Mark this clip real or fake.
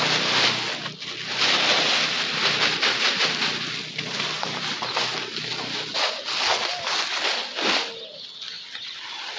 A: real